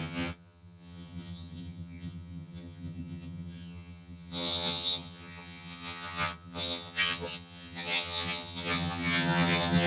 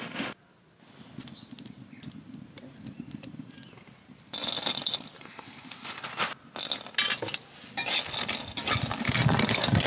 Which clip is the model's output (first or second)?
first